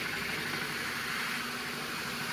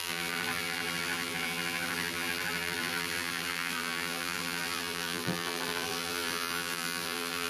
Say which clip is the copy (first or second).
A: second